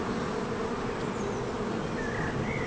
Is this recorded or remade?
recorded